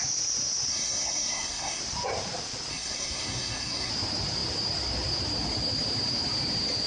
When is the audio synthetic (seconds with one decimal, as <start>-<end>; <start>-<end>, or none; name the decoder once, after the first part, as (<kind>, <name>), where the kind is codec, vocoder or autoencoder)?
0.7-1.8 (codec, SNAC); 2.7-3.9